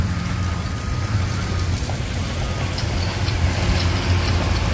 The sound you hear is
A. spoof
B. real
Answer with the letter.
B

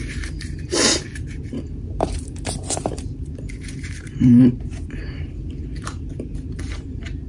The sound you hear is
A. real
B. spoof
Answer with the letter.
B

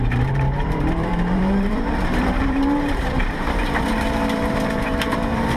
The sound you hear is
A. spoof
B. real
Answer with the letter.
A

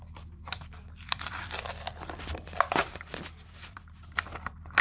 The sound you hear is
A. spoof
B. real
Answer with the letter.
A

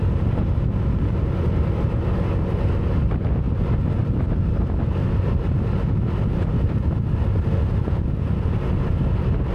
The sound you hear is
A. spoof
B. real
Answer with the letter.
B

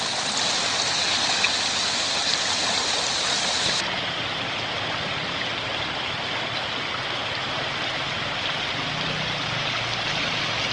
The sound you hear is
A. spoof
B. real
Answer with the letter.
A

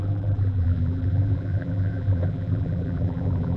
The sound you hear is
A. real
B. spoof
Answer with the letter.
B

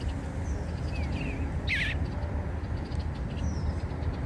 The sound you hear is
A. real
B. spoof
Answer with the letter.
A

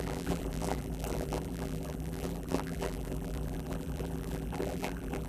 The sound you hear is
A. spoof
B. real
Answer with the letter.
A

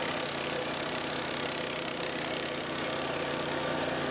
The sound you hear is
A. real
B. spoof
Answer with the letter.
B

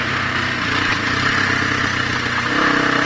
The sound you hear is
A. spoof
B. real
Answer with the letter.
B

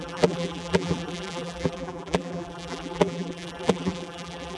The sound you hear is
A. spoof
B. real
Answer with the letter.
A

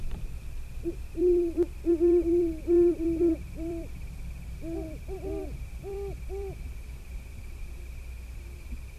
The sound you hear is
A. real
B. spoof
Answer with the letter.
B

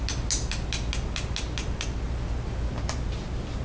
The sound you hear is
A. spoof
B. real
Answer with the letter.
B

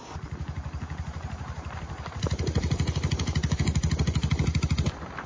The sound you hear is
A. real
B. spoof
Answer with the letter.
B